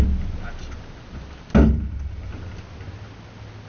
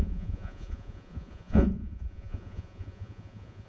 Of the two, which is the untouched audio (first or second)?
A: first